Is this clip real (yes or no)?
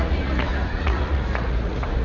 no